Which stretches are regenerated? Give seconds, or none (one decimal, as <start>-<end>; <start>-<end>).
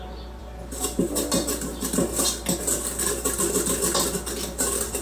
none